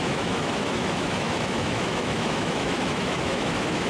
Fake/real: fake